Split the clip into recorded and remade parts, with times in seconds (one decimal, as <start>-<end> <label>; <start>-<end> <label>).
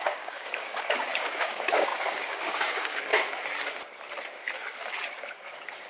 0.0-3.1 remade; 3.1-5.3 recorded; 5.3-5.9 remade